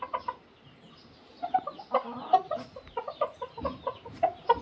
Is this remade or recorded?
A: recorded